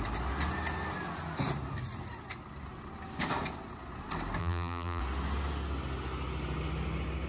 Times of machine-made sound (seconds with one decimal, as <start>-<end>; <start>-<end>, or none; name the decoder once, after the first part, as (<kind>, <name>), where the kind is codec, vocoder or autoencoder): 4.4-5.0 (vocoder, BigVGAN v2)